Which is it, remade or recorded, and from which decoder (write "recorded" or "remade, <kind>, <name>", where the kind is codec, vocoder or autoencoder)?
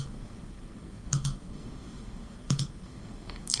remade, codec, SNAC